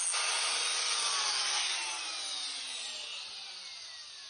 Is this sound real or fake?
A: real